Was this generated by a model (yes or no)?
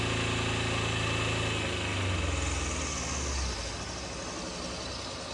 no